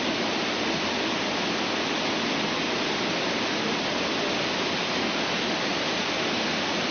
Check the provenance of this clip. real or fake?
real